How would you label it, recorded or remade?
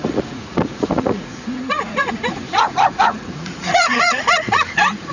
remade